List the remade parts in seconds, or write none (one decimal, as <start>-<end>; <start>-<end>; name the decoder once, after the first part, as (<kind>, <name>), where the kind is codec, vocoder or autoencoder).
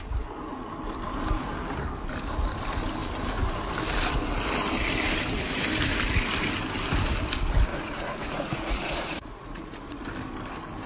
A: 7.7-10.0 (vocoder, Vocos)